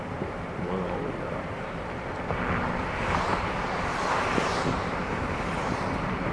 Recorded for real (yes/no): no